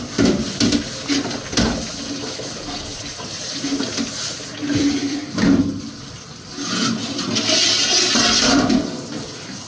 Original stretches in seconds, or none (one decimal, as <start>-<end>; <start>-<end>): 0.0-2.9; 5.6-9.7